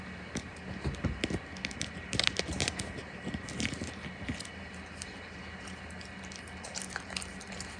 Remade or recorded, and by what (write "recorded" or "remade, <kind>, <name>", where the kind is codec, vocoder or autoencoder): recorded